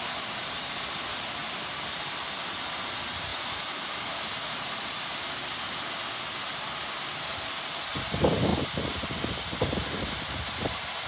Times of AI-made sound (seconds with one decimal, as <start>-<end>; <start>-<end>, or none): 3.3-4.9